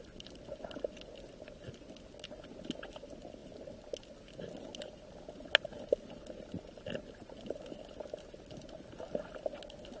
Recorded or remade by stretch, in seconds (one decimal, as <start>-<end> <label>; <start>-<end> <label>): 0.0-10.0 recorded